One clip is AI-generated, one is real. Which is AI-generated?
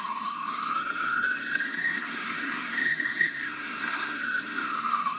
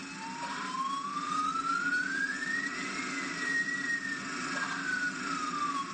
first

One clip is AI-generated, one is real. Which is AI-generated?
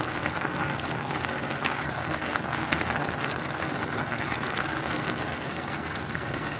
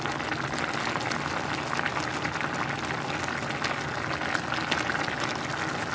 first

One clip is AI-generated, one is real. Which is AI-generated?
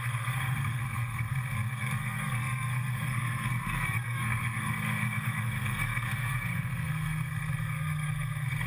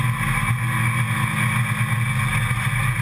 first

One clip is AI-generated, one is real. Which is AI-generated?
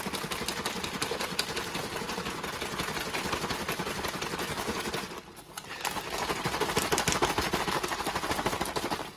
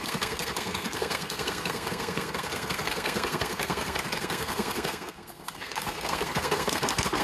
second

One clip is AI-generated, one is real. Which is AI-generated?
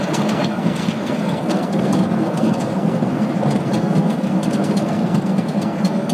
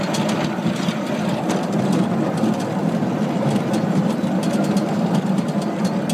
first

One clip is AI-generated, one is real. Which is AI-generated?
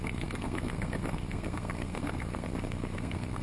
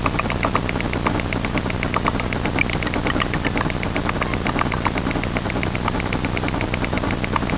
first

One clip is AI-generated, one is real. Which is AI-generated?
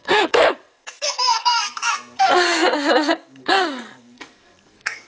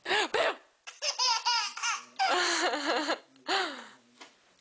first